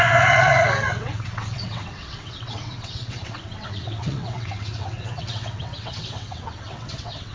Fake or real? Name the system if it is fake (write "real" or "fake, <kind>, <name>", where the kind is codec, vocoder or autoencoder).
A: fake, vocoder, WaveNeXt